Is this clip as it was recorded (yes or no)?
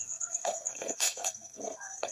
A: no